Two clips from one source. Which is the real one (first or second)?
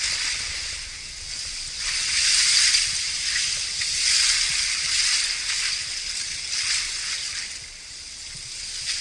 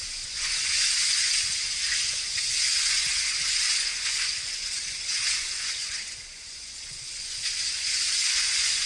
first